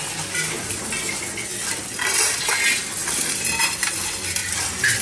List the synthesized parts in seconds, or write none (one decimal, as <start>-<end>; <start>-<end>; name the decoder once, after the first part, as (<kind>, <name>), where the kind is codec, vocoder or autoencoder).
1.5-2.5 (vocoder, BigVGAN v2); 4.4-5.0